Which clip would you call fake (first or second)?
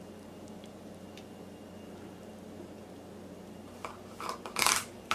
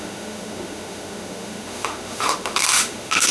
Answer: second